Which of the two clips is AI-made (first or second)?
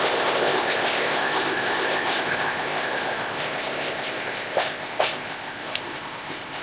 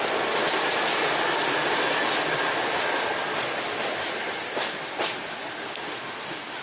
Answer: first